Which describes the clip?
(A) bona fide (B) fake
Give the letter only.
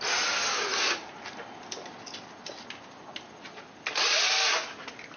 A